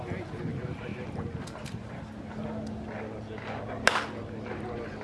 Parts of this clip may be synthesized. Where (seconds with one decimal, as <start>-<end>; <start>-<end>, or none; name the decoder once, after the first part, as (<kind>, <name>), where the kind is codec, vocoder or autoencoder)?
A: none